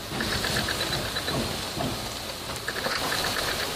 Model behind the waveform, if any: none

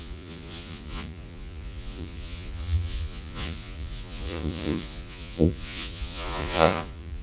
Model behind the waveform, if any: vocoder, Vocos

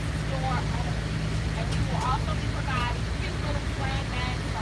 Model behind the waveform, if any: none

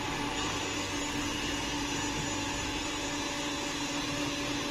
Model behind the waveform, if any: none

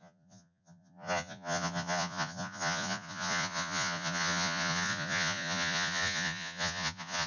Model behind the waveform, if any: vocoder, Vocos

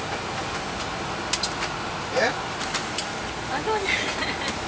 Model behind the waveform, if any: none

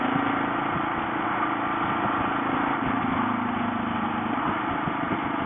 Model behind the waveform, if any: none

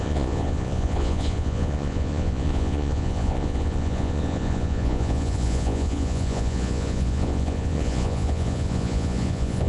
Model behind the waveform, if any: vocoder, Vocos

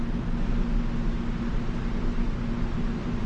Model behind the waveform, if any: none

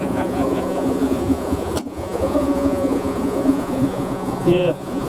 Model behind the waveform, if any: vocoder, Vocos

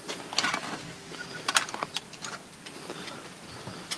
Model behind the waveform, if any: none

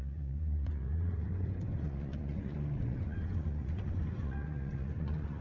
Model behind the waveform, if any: vocoder, Vocos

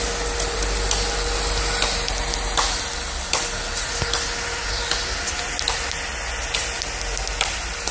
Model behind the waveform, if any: none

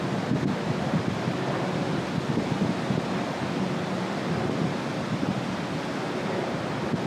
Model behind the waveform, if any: none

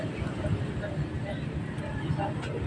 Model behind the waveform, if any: none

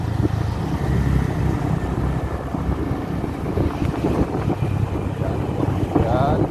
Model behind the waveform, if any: none